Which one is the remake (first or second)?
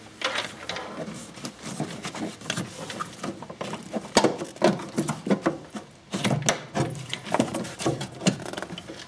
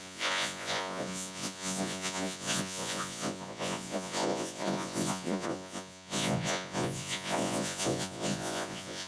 second